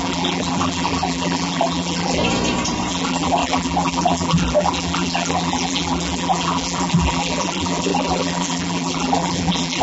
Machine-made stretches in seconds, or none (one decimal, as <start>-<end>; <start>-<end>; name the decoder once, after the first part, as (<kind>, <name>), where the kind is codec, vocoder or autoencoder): 0.0-2.2 (vocoder, BigVGAN v2); 2.9-9.8